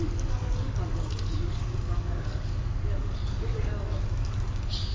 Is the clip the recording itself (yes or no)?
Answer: no